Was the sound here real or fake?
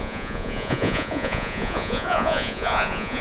fake